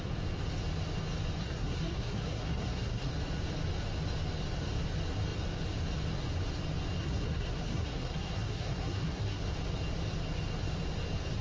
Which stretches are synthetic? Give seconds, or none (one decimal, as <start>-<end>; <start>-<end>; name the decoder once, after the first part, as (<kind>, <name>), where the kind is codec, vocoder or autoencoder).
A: 1.4-3.1 (codec, SNAC); 7.0-9.4

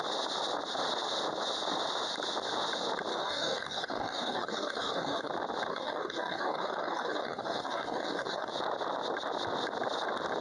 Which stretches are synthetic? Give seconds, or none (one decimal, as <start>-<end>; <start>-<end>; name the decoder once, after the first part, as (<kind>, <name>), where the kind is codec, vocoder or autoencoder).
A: 3.1-5.3 (codec, DAC); 5.7-8.5

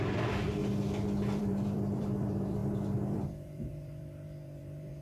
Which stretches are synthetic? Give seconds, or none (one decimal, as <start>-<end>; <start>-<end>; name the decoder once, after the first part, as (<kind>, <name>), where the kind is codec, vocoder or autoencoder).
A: 0.0-0.6 (vocoder, BigVGAN v2); 1.4-5.0

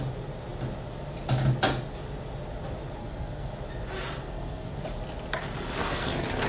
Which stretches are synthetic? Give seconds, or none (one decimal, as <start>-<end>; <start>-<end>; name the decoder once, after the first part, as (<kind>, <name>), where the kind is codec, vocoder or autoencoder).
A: 3.0-3.5 (codec, SNAC); 4.2-4.8; 5.8-6.5

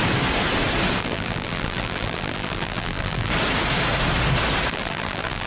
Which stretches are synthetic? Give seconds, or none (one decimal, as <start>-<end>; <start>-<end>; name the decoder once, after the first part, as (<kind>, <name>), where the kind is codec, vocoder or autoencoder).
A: 1.0-3.3 (vocoder, BigVGAN v2); 4.7-5.5